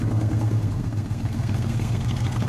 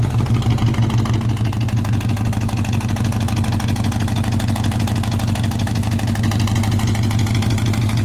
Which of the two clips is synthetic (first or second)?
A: first